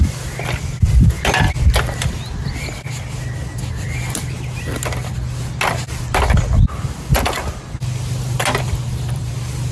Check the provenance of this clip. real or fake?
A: real